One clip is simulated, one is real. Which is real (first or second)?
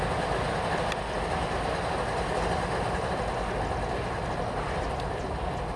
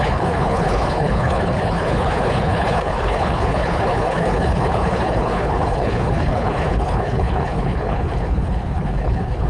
first